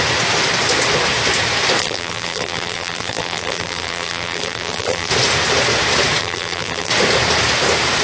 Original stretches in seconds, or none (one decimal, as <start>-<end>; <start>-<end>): 0.0-1.8; 5.1-6.2; 6.9-8.0